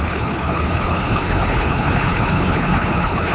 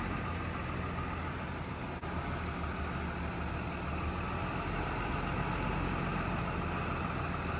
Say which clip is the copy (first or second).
first